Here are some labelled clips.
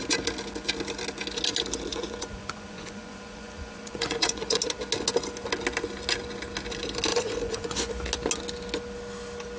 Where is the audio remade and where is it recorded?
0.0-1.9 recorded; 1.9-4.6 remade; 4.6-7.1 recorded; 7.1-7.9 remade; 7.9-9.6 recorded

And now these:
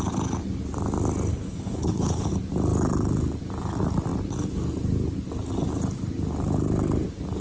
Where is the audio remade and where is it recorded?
0.0-1.3 recorded; 1.3-2.3 remade; 2.3-7.4 recorded

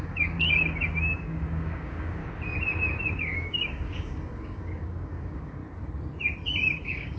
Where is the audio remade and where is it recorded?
0.0-2.2 remade; 2.2-3.1 recorded; 3.1-5.6 remade; 5.6-6.8 recorded; 6.8-7.2 remade

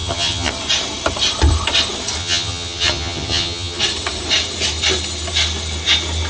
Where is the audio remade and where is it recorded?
0.0-0.5 remade; 0.5-2.2 recorded; 2.2-3.8 remade; 3.8-6.3 recorded

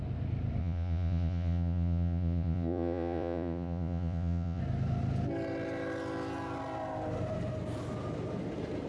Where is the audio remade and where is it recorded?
0.0-0.6 recorded; 0.6-4.6 remade; 4.6-8.9 recorded